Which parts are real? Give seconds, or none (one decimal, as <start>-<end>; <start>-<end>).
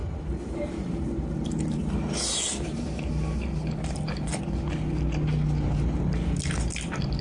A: 3.1-7.2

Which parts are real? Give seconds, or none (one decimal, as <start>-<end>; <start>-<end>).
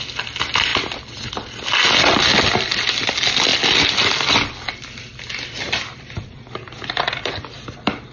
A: 0.0-8.1